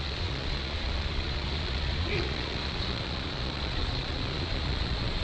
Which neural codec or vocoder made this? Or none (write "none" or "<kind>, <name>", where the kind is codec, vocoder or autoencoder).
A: vocoder, Vocos